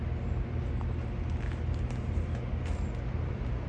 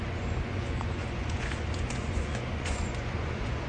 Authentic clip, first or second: first